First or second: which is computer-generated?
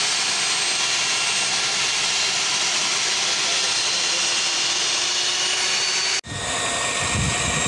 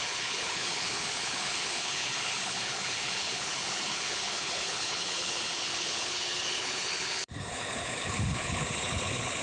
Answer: second